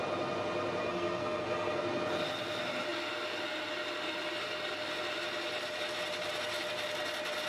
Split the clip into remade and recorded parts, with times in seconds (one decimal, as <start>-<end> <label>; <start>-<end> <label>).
0.0-0.8 recorded; 0.8-1.8 remade; 1.8-7.5 recorded